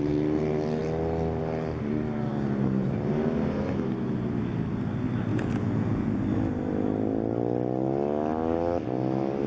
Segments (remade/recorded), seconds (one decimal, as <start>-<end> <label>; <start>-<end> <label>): 0.0-5.3 recorded; 5.3-6.2 remade; 6.2-9.5 recorded